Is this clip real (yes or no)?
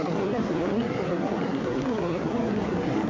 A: no